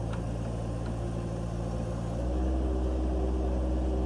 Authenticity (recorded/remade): recorded